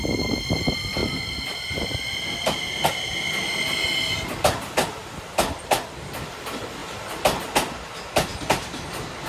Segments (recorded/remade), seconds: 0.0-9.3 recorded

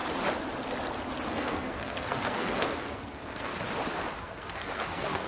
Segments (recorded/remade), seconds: 0.0-1.3 recorded; 1.3-3.5 remade; 3.5-4.2 recorded; 4.2-5.3 remade

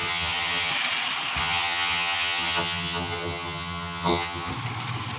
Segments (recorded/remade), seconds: 0.0-0.7 remade; 0.7-1.4 recorded; 1.4-4.5 remade; 4.5-5.2 recorded

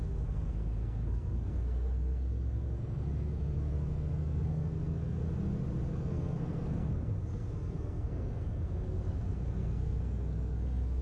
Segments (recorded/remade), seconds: 0.0-5.2 remade; 5.2-5.9 recorded; 5.9-11.0 remade

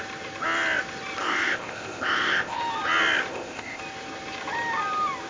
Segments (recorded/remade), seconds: 0.0-1.2 recorded; 1.2-2.6 remade; 2.6-3.3 recorded; 3.3-3.8 remade; 3.8-5.3 recorded

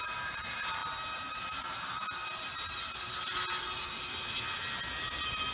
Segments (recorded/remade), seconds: 0.0-5.5 remade